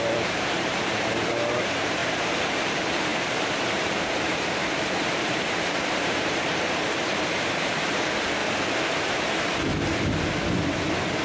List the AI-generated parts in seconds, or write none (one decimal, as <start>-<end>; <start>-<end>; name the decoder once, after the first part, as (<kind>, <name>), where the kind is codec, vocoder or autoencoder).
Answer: 0.0-8.4 (vocoder, BigVGAN v2); 9.2-9.7